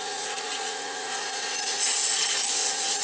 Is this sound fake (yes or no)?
yes